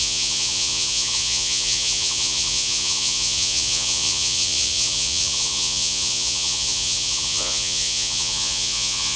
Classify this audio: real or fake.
fake